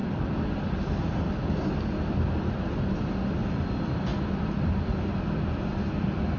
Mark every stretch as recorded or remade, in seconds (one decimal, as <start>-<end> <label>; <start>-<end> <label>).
0.0-4.1 recorded; 4.1-4.8 remade; 4.8-6.4 recorded